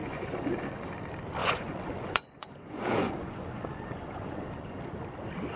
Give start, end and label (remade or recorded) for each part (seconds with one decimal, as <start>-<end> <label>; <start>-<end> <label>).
0.0-0.9 remade; 0.9-1.4 recorded; 1.4-4.8 remade; 4.8-5.6 recorded